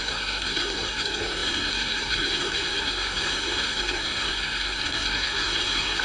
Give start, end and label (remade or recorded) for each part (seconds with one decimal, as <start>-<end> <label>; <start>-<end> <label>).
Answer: 0.0-6.0 remade